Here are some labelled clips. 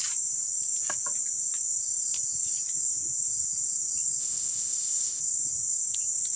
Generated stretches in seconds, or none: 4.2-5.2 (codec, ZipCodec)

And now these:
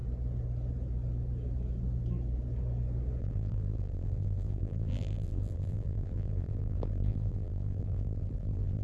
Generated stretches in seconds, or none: 3.2-8.8 (vocoder, BigVGAN v2)

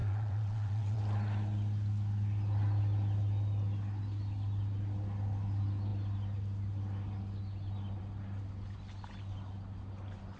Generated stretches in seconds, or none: 0.0-1.0 (vocoder, WaveNeXt)

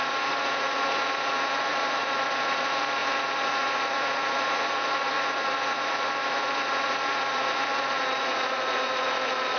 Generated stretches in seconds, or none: 0.0-9.6 (vocoder, Vocos)

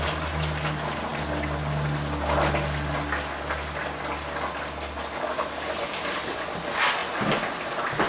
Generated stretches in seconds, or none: none

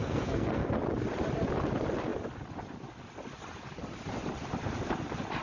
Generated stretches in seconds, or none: 0.0-0.7 (codec, SNAC)

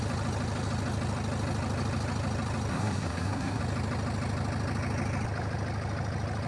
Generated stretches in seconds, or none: 2.7-3.6 (codec, SNAC)